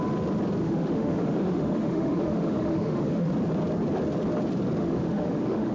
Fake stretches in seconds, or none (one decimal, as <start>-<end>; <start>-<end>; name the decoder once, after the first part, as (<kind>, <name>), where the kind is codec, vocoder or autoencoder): 0.6-3.3 (autoencoder, DAC-VAE); 4.8-5.7